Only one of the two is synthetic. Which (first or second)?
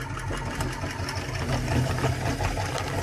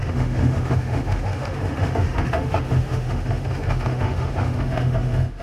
second